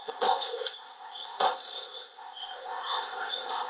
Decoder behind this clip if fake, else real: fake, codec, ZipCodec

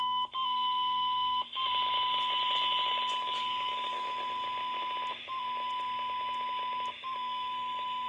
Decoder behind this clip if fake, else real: real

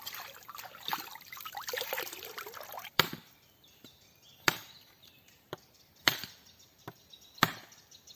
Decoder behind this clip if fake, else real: fake, vocoder, BigVGAN v2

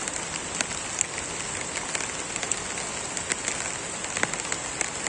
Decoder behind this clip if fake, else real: real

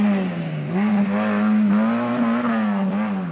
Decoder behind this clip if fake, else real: real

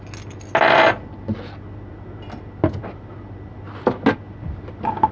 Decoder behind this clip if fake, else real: real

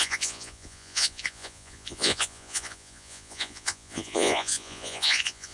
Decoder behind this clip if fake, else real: fake, vocoder, Vocos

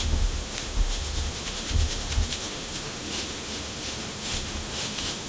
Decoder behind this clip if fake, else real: fake, autoencoder, DAC-VAE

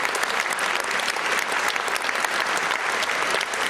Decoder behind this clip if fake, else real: real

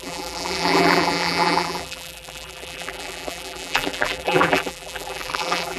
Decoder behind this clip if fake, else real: fake, vocoder, BigVGAN v2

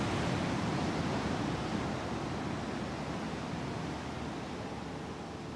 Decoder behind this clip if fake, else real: real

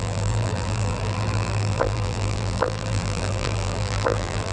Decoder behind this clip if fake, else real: fake, vocoder, BigVGAN v2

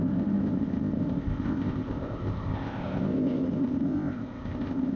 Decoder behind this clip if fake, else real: fake, codec, ZipCodec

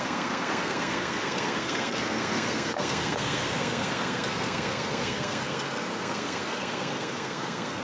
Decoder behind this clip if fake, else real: fake, codec, SNAC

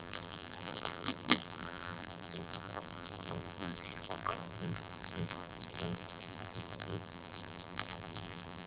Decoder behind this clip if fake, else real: fake, vocoder, BigVGAN v2